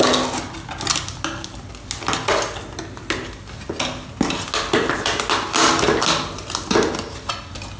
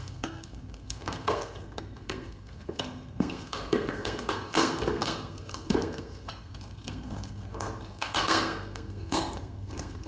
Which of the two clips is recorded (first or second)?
first